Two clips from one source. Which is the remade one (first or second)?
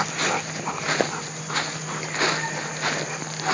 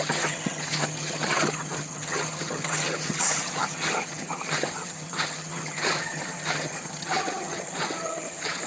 second